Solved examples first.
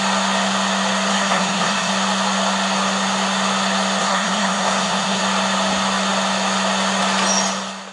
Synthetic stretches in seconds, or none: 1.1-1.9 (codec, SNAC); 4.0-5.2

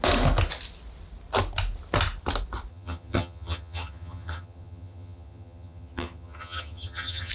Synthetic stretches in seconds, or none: 2.7-7.3 (vocoder, HiFi-GAN)

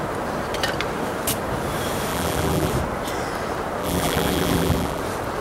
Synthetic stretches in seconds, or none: 2.1-2.7 (vocoder, BigVGAN v2); 3.8-5.0

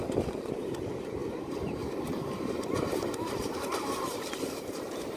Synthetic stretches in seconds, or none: 0.5-5.2 (vocoder, BigVGAN v2)

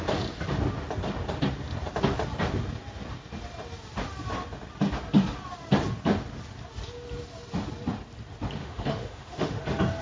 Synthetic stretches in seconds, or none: 8.6-9.6 (autoencoder, DAC-VAE)

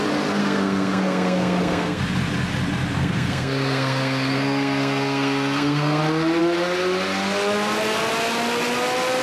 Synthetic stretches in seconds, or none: 0.4-2.0 (codec, SNAC); 3.0-6.0